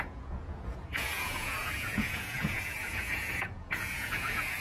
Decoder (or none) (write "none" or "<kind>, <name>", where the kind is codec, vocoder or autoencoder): vocoder, Vocos